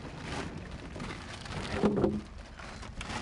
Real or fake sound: real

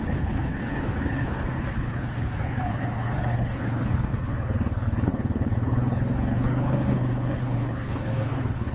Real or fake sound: fake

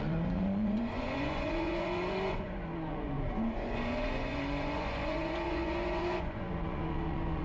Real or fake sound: fake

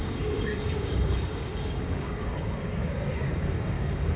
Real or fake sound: fake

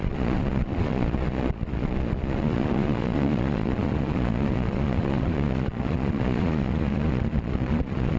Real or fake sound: fake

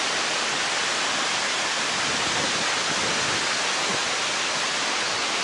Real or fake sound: real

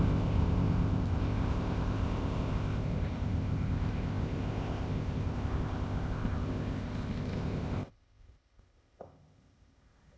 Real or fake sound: fake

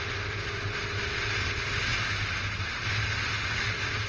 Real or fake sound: real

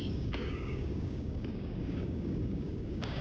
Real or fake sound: fake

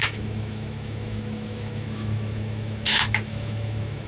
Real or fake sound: fake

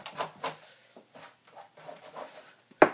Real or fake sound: fake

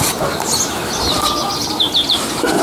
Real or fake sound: real